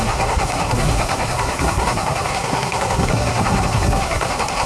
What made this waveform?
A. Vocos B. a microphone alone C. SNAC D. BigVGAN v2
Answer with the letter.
C